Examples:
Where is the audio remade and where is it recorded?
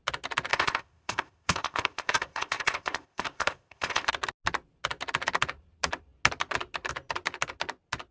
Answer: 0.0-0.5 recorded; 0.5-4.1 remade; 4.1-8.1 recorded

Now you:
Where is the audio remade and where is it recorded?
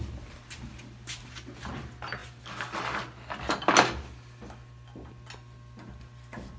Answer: 0.0-6.6 recorded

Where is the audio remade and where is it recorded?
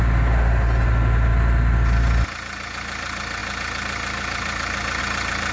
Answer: 0.0-5.5 recorded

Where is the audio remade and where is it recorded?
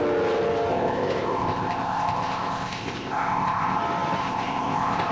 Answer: 0.0-0.7 recorded; 0.7-3.8 remade; 3.8-4.2 recorded; 4.2-5.1 remade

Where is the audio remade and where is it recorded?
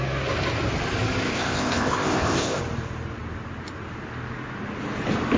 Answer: 0.0-1.2 recorded; 1.2-2.6 remade; 2.6-5.4 recorded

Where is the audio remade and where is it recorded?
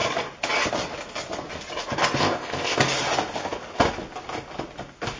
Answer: 0.0-2.2 recorded; 2.2-2.8 remade; 2.8-5.2 recorded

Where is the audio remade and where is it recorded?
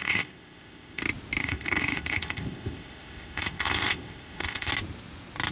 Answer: 0.0-1.0 remade; 1.0-1.4 recorded; 1.4-4.7 remade; 4.7-5.5 recorded